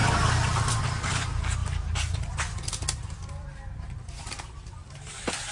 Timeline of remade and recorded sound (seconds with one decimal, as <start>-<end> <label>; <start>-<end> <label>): 0.0-0.8 remade; 0.8-5.5 recorded